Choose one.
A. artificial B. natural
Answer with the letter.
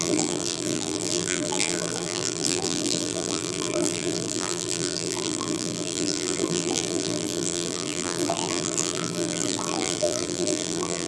A